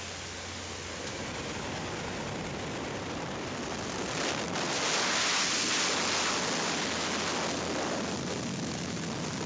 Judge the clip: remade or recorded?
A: recorded